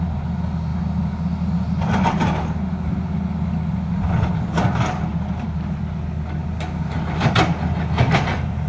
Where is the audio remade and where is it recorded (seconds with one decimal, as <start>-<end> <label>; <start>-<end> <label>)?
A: 0.0-8.7 recorded